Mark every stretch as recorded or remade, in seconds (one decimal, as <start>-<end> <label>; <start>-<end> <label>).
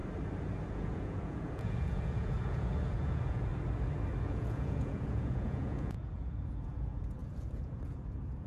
0.0-0.7 recorded; 0.7-3.5 remade; 3.5-4.2 recorded; 4.2-8.5 remade